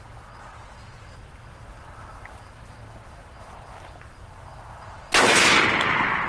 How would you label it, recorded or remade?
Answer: recorded